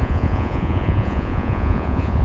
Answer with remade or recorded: remade